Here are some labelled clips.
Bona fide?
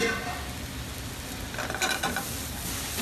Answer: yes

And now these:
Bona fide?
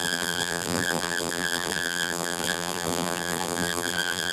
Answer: no